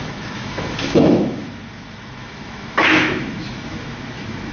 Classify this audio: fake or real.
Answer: fake